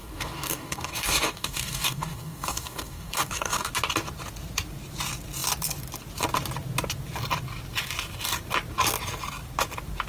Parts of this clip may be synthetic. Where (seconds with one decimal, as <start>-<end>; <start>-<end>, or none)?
0.0-3.7